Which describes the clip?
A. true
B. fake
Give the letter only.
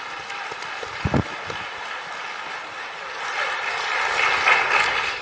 A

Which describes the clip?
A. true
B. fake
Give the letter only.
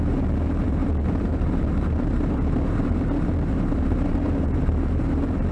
B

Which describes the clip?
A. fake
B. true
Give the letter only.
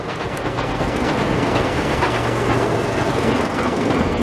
A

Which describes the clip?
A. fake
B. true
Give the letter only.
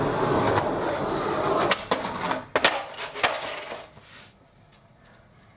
B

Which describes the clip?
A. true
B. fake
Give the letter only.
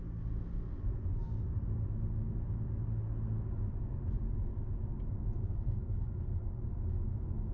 A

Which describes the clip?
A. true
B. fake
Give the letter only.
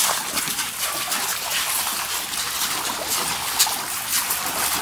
A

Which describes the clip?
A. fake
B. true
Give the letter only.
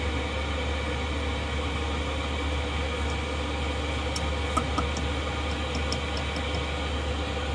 B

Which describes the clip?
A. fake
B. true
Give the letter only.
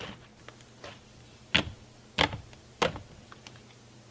B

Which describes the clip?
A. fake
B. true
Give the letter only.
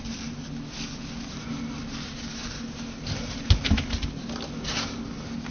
B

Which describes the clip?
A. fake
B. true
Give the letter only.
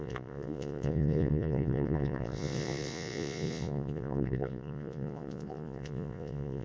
A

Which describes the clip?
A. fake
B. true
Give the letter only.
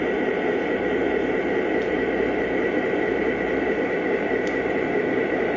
A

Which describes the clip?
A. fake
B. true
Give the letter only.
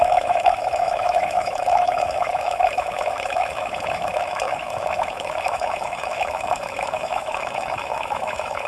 A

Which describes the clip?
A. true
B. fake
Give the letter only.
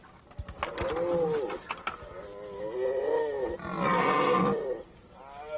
A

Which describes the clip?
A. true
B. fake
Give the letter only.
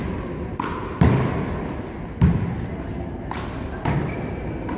A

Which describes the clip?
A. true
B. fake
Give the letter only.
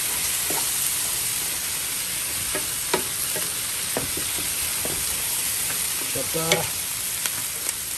A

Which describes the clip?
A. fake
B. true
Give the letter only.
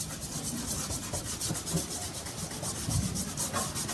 B